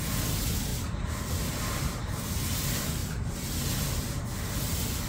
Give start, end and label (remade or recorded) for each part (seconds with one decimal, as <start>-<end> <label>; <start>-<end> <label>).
0.0-5.1 recorded